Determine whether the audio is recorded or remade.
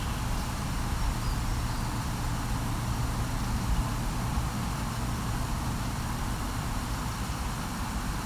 recorded